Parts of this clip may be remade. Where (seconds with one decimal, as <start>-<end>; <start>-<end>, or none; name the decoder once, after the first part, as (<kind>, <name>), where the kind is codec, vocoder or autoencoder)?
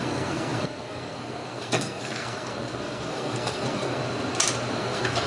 0.0-4.0 (codec, SNAC); 4.7-5.3